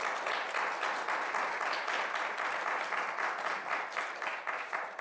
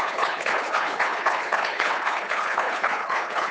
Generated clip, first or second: second